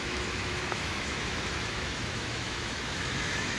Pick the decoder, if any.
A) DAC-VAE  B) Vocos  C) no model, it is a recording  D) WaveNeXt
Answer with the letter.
A